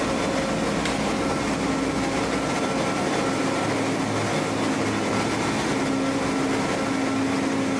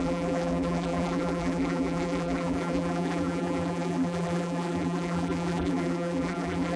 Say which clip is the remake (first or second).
second